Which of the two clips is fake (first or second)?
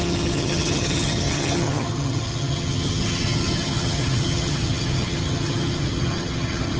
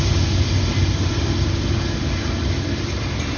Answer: first